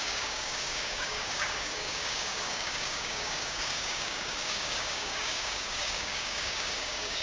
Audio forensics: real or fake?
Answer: fake